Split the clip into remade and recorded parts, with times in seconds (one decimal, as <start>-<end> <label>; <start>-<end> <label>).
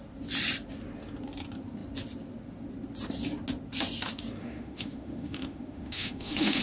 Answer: 0.0-4.4 recorded; 4.4-6.6 remade